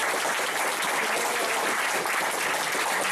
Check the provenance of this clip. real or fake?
real